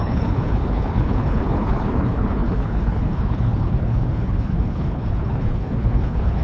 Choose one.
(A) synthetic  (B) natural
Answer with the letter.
A